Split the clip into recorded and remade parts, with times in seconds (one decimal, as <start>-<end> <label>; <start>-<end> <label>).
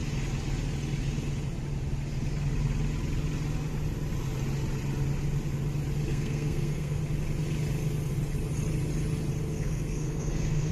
0.0-6.1 recorded; 6.1-7.0 remade; 7.0-9.5 recorded; 9.5-10.7 remade